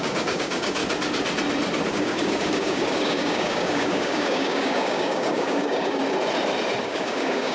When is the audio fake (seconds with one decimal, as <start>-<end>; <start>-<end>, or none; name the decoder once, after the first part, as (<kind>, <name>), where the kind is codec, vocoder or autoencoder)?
0.0-0.8 (codec, DAC); 1.9-6.0; 6.8-7.5